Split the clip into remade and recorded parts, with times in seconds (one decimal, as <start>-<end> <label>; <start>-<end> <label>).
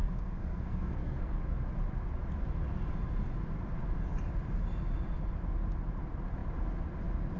0.0-1.4 remade; 1.4-7.4 recorded